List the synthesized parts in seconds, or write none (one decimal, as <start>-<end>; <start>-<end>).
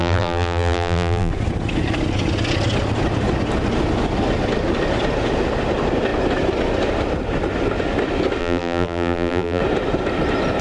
0.0-1.3; 8.4-9.6